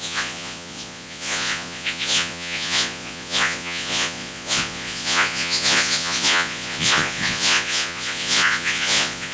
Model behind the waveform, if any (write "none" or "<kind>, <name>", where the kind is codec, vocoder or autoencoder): vocoder, Vocos